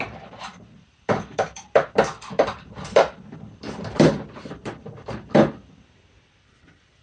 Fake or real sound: fake